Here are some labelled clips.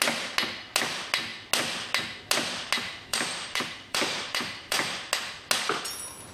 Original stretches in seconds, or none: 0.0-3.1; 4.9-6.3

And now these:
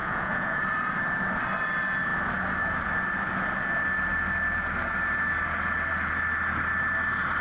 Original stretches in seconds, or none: 0.6-7.4

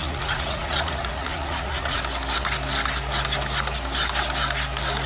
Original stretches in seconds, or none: 2.0-5.1

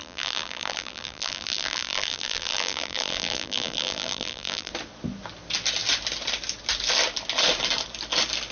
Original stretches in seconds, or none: 4.7-8.5

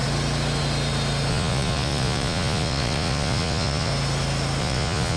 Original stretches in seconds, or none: 0.0-1.3; 3.9-4.6